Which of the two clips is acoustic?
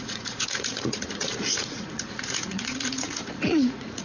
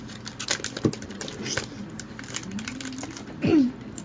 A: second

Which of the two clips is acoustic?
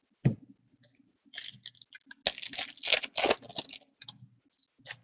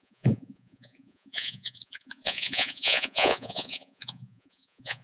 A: first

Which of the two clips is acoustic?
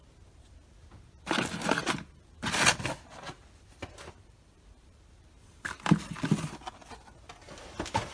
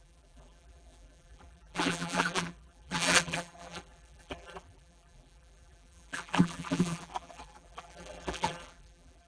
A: first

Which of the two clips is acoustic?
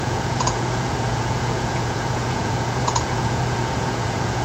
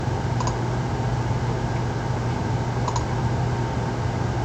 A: second